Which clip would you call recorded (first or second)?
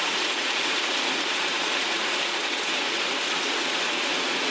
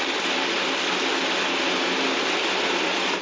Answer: second